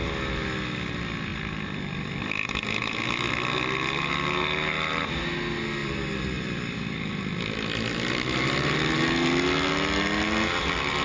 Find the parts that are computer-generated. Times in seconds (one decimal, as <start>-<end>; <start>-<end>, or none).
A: 1.3-3.3; 5.8-7.4